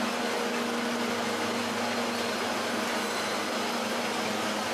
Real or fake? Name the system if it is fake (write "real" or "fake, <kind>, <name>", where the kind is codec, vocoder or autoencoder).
real